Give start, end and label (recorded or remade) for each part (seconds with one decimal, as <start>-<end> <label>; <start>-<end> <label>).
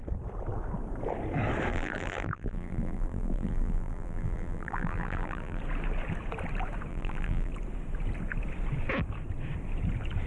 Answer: 0.0-1.7 recorded; 1.7-5.6 remade; 5.6-6.9 recorded; 6.9-7.5 remade; 7.5-10.3 recorded